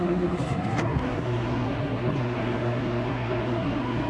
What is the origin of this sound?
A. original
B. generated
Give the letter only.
B